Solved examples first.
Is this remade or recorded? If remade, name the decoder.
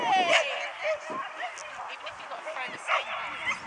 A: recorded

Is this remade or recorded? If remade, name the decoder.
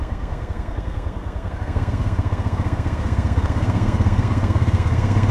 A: remade, codec, SNAC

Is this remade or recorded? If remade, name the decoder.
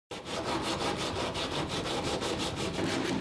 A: recorded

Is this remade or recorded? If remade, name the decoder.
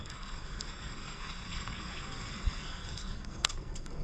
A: remade, codec, SNAC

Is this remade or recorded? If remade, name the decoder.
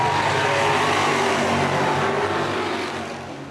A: recorded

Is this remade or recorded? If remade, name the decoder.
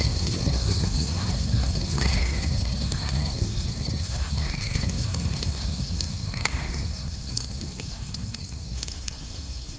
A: remade, codec, SNAC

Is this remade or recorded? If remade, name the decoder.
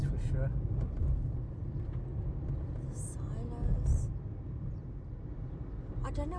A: recorded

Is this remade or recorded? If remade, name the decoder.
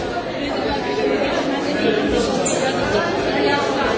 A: recorded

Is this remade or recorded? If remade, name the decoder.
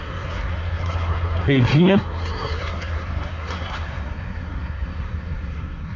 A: remade, codec, SNAC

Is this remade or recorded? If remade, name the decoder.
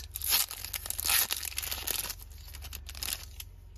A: recorded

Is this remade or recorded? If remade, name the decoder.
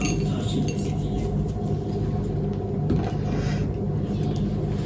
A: recorded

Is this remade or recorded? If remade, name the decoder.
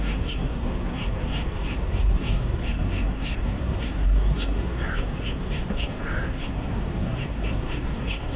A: remade, codec, SNAC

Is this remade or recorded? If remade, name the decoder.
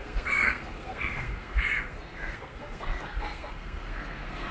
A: remade, codec, SNAC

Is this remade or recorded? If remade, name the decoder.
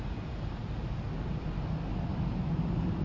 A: recorded